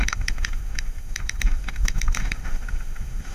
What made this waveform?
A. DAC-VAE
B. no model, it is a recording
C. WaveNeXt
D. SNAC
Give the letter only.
A